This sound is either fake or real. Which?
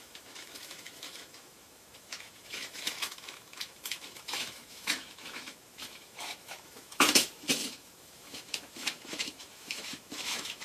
fake